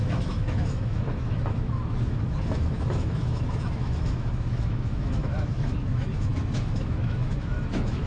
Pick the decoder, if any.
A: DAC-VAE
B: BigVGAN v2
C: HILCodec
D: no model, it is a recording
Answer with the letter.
A